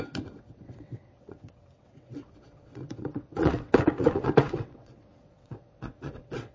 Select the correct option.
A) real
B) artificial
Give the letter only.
B